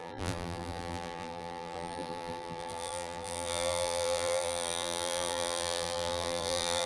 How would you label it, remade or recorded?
remade